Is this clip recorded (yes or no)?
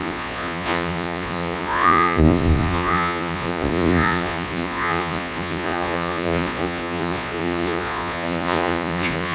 no